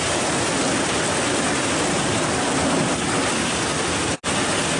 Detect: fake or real real